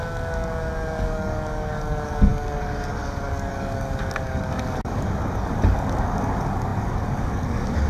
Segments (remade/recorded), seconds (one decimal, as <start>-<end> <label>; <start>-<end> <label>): 0.0-7.9 remade